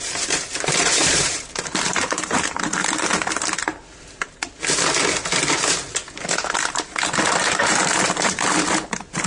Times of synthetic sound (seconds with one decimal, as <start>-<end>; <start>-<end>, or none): 0.0-2.8; 7.3-9.3